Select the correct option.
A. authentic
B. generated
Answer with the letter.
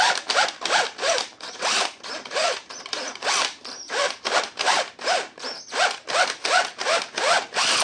B